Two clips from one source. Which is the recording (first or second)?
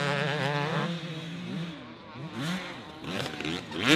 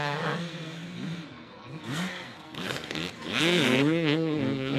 first